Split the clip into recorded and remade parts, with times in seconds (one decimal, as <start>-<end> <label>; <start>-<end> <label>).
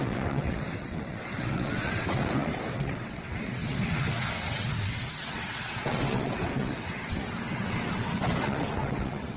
0.0-9.4 remade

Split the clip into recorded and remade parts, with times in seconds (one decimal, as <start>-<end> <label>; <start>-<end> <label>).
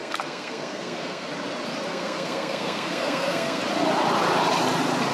0.0-1.3 remade; 1.3-1.9 recorded; 1.9-3.6 remade; 3.6-5.1 recorded